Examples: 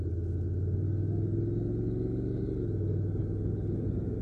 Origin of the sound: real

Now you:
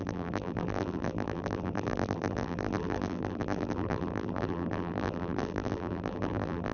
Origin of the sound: fake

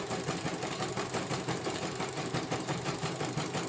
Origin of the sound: fake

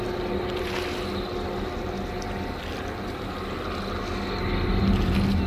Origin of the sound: real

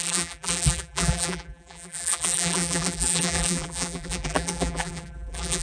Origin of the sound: fake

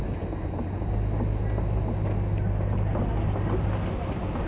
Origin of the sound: real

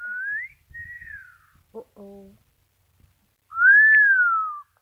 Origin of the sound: real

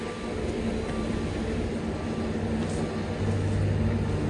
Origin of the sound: real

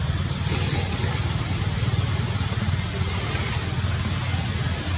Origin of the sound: real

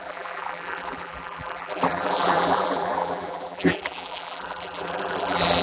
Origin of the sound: fake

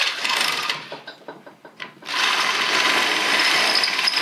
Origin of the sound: real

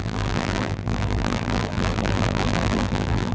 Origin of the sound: fake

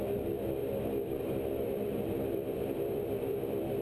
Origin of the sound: fake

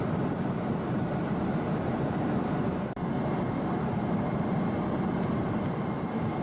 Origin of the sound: fake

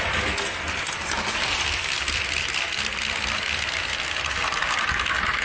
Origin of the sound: real